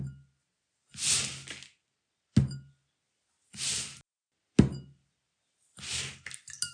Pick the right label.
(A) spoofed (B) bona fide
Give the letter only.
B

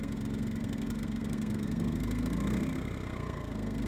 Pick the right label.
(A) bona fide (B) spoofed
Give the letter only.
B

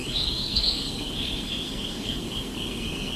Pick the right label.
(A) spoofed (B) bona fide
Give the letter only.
A